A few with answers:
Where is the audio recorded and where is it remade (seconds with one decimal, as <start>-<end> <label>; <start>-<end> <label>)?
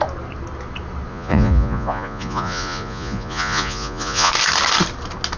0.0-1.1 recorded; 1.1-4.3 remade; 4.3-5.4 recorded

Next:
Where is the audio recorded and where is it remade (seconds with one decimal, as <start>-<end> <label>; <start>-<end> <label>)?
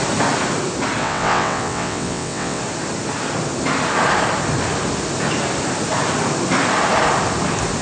0.0-1.0 recorded; 1.0-2.6 remade; 2.6-7.8 recorded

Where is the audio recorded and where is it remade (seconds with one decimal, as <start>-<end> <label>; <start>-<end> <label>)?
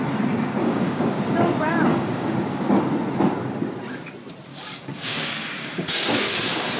0.0-0.6 recorded; 0.6-1.2 remade; 1.2-1.9 recorded; 1.9-2.8 remade; 2.8-4.5 recorded; 4.5-6.8 remade